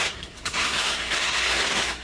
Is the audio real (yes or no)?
no